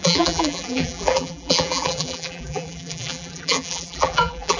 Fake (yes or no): yes